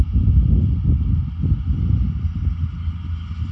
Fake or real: real